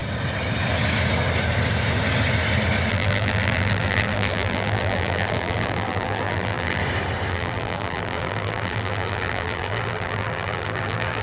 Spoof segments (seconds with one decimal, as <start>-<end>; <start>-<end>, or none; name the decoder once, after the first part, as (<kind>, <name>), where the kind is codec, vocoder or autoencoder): 2.9-6.8 (vocoder, BigVGAN v2); 7.3-11.2